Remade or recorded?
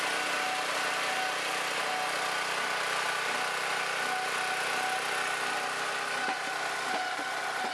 recorded